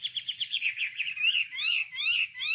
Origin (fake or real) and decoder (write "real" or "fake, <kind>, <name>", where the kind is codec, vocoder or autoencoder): fake, vocoder, BigVGAN v2